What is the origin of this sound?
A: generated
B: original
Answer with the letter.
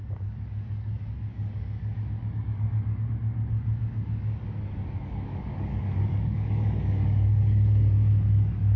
A